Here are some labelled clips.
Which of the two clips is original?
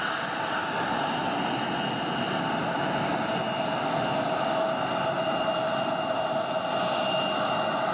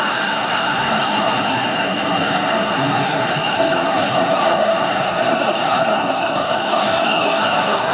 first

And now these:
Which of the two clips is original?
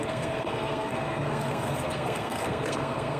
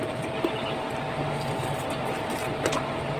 second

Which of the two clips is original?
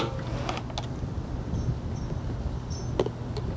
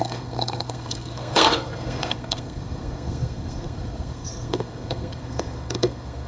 first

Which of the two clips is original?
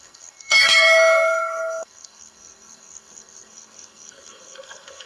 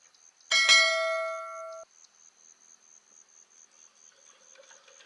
second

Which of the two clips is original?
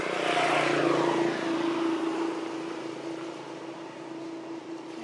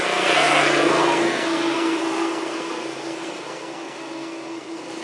first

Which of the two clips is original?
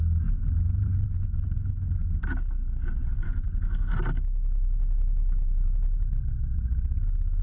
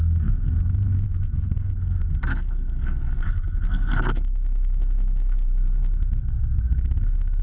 first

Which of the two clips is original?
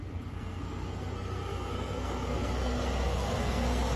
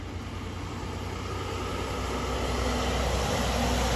second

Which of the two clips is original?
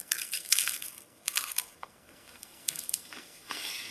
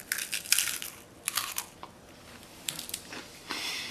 second